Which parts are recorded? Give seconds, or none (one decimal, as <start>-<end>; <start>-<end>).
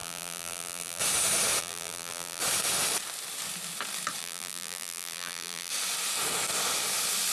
1.0-1.6; 2.4-4.2; 5.7-7.3